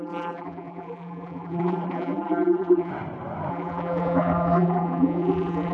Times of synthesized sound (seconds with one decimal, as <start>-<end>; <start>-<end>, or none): 0.0-2.9; 3.5-5.7